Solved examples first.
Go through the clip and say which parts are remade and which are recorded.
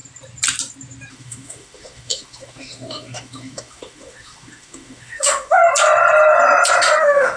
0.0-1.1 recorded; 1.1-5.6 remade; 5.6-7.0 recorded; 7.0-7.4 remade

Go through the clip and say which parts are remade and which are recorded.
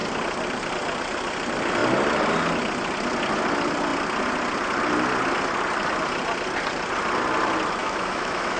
0.0-7.8 recorded; 7.8-8.6 remade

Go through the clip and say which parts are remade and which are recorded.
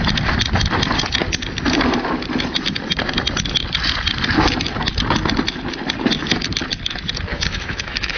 0.0-7.3 recorded; 7.3-8.2 remade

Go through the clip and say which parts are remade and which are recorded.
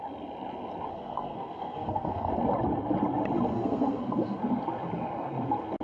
0.0-0.9 recorded; 0.9-2.3 remade; 2.3-3.5 recorded; 3.5-4.4 remade; 4.4-5.8 recorded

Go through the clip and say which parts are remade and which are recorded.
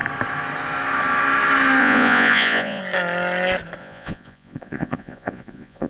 0.0-1.8 recorded; 1.8-2.8 remade; 2.8-3.8 recorded; 3.8-5.9 remade